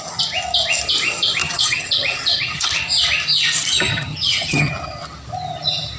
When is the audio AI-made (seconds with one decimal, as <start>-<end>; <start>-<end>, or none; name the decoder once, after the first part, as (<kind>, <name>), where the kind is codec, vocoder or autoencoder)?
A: 1.4-2.7 (vocoder, HiFi-GAN); 3.9-4.7